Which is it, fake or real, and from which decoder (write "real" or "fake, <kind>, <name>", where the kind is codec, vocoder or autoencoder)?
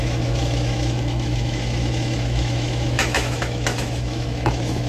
fake, autoencoder, DAC-VAE